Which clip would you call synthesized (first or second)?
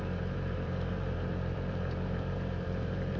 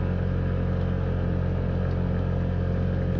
first